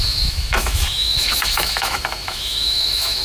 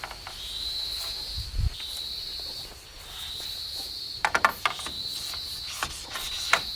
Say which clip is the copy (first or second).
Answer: first